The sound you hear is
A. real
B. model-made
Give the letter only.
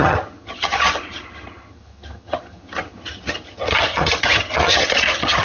B